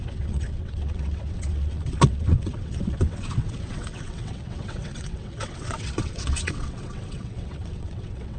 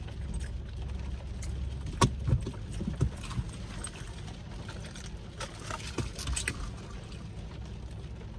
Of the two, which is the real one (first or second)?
second